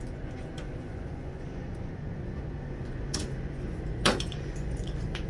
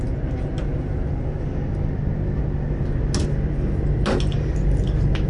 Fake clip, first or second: first